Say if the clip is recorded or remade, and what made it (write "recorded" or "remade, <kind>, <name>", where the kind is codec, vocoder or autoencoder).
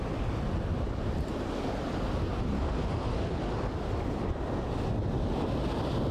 recorded